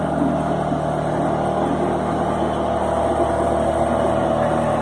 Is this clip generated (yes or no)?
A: no